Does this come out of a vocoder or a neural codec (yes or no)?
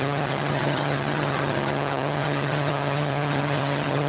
yes